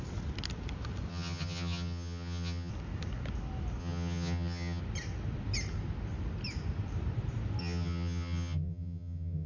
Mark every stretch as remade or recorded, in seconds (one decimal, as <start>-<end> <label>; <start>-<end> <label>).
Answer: 0.0-1.1 recorded; 1.1-2.7 remade; 2.7-3.8 recorded; 3.8-4.8 remade; 4.8-7.6 recorded; 7.6-9.5 remade